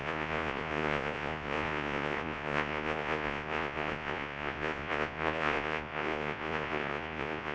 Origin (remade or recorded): remade